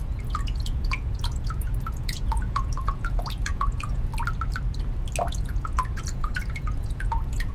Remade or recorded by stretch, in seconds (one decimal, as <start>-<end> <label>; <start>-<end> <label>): 0.0-4.1 remade; 4.1-5.3 recorded; 5.3-7.5 remade